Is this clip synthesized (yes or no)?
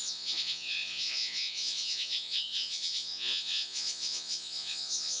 yes